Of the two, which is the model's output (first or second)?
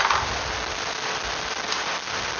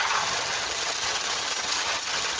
second